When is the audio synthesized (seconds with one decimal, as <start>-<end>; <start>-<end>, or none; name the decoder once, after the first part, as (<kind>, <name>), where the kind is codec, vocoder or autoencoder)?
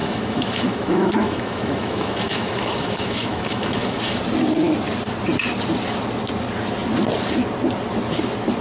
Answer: 0.0-4.2 (autoencoder, DAC-VAE)